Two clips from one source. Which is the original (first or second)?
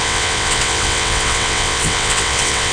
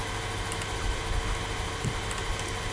second